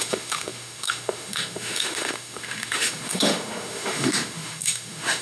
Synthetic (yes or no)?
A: yes